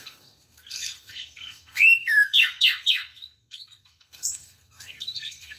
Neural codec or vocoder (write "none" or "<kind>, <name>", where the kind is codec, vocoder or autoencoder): codec, SNAC